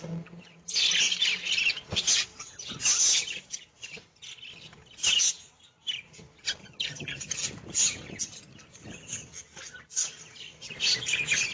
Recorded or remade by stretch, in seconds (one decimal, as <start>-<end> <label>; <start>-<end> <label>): 0.0-6.6 recorded; 6.6-7.3 remade; 7.3-11.5 recorded